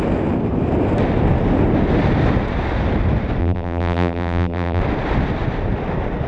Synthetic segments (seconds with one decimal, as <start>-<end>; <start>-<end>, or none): 3.4-4.8